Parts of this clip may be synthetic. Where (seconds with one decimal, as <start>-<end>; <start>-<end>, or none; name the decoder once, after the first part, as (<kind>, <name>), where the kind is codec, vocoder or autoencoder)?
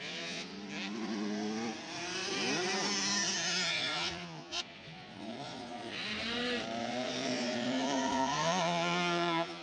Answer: 0.0-0.5 (vocoder, Vocos); 3.7-6.1; 6.8-9.6